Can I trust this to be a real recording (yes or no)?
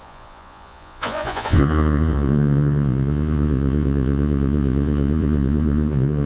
no